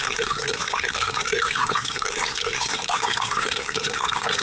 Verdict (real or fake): fake